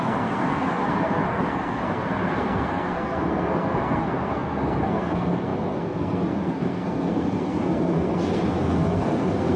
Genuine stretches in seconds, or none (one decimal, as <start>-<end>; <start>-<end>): none